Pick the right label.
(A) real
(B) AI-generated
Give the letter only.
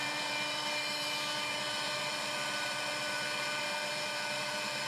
B